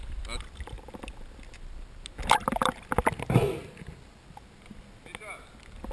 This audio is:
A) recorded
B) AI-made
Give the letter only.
A